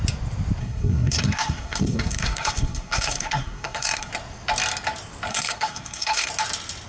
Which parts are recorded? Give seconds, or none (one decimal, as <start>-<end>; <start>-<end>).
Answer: 0.0-0.6; 4.1-5.3; 6.3-6.9